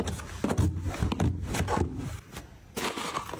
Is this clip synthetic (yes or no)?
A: no